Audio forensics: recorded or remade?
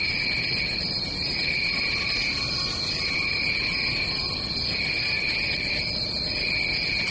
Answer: recorded